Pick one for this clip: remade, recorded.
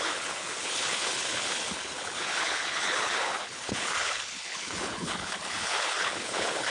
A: remade